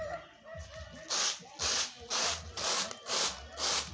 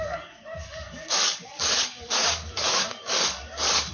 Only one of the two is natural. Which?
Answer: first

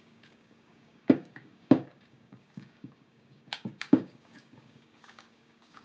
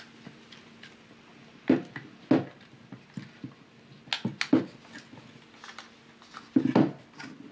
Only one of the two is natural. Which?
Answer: second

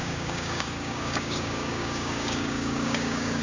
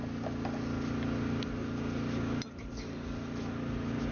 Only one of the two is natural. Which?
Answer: second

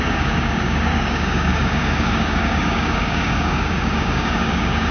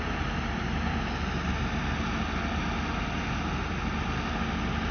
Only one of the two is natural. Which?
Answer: second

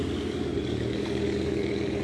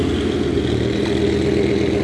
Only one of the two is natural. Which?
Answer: second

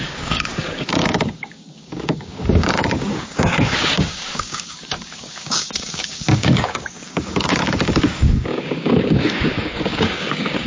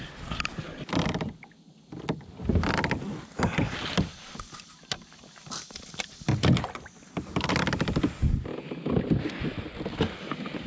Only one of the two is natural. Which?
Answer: second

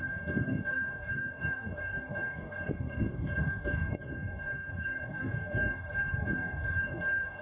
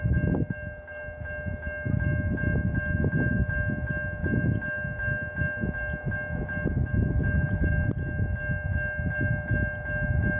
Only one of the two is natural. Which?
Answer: second